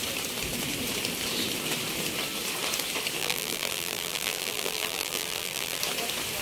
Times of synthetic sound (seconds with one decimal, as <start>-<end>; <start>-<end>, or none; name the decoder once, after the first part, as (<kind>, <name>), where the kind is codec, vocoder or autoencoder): 3.2-5.8 (vocoder, BigVGAN v2)

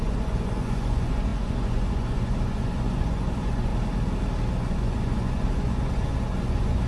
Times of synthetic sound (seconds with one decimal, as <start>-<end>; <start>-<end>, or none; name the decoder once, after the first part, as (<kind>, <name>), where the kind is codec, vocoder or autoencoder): 0.0-3.7 (vocoder, Vocos); 4.5-6.9

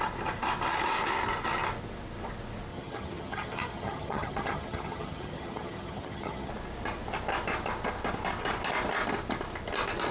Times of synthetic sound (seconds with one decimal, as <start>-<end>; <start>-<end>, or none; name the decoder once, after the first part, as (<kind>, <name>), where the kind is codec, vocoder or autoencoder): 2.7-6.5 (vocoder, HiFi-GAN)

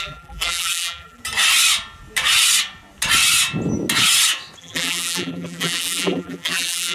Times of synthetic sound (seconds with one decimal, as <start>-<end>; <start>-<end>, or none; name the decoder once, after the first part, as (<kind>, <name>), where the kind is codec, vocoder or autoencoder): 0.0-1.2 (vocoder, BigVGAN v2); 4.6-6.9

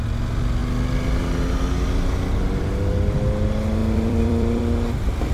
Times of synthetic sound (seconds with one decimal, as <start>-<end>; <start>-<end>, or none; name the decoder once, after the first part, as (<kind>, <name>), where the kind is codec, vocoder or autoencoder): 3.8-4.6 (vocoder, BigVGAN v2)